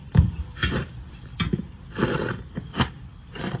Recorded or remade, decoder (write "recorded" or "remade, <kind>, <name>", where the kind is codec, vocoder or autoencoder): remade, vocoder, BigVGAN v2